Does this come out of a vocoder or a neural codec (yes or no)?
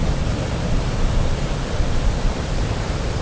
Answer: yes